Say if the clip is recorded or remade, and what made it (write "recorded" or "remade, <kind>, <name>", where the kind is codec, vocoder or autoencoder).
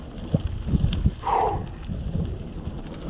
recorded